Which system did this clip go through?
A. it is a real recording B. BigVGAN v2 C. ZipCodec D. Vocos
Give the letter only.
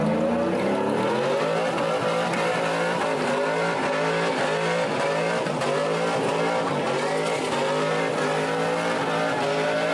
A